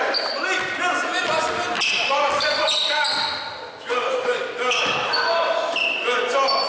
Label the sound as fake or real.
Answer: real